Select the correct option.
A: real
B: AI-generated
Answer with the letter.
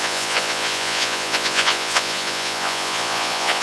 B